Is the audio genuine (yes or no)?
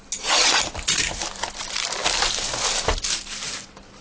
yes